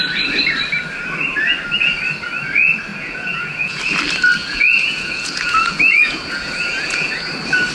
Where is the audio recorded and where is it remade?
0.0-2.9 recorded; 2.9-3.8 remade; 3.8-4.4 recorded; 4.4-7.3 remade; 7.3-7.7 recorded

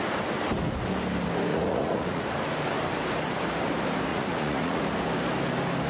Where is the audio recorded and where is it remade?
0.0-1.5 recorded; 1.5-2.2 remade; 2.2-4.1 recorded; 4.1-4.8 remade; 4.8-5.9 recorded